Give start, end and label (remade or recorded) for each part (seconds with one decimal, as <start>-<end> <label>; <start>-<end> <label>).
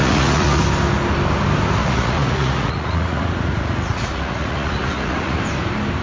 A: 0.0-0.6 remade; 0.6-1.8 recorded; 1.8-5.4 remade; 5.4-6.0 recorded